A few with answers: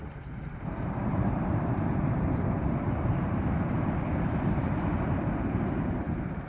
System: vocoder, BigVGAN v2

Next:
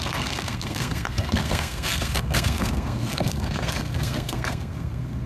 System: codec, SNAC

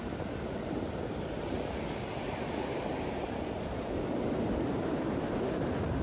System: none